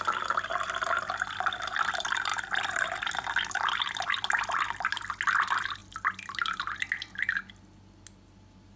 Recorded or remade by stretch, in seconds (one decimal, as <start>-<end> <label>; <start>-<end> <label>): 0.0-0.5 recorded; 0.5-1.9 remade; 1.9-2.3 recorded; 2.3-5.1 remade; 5.1-5.8 recorded; 5.8-7.3 remade; 7.3-8.8 recorded